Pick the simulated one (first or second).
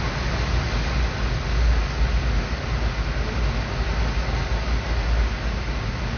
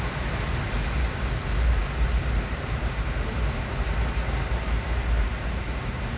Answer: second